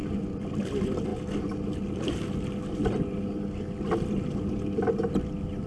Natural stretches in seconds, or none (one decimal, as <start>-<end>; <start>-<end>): 0.0-5.7